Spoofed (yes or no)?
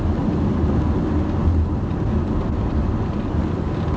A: no